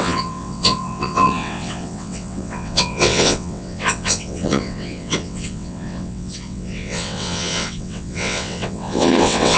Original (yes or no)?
no